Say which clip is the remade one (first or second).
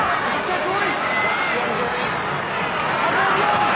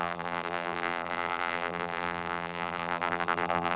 second